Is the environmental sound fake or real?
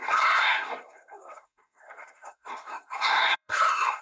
fake